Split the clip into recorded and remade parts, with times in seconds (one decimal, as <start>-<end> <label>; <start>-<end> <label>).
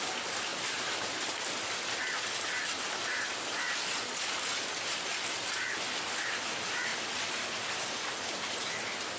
0.0-0.5 recorded; 0.5-2.9 remade; 2.9-6.9 recorded; 6.9-7.6 remade; 7.6-9.2 recorded